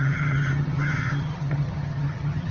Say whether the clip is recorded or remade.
remade